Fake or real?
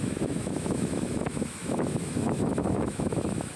fake